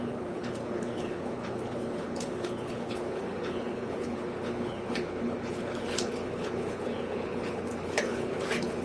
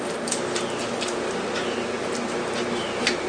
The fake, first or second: first